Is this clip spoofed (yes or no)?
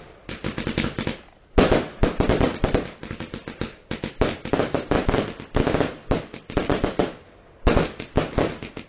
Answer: no